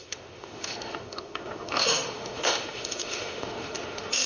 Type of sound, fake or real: fake